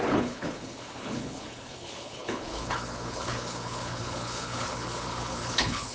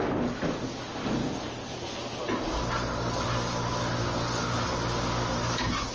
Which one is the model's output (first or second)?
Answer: first